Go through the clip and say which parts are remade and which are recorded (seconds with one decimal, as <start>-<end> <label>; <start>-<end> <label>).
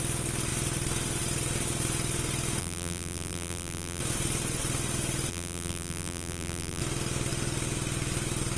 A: 0.0-2.6 recorded; 2.6-4.0 remade; 4.0-5.3 recorded; 5.3-6.8 remade; 6.8-8.6 recorded